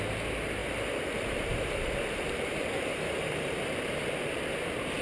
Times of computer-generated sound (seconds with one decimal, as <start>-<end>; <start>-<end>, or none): 0.6-3.6